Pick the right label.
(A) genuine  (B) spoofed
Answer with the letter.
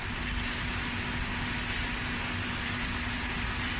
A